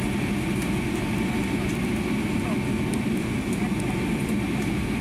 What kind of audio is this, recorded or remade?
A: recorded